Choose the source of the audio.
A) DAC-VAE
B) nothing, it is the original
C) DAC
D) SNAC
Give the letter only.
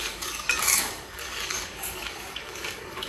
C